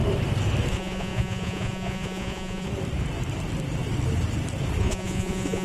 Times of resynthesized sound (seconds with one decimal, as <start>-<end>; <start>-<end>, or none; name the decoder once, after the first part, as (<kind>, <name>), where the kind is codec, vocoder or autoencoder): 0.7-2.7 (vocoder, Vocos); 4.8-5.6